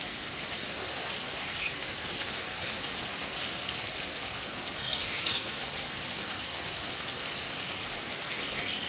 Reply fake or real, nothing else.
fake